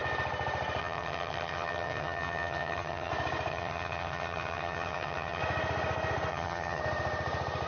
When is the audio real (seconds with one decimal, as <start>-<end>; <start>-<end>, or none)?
0.0-0.8; 3.1-3.5; 5.4-6.3; 6.8-7.7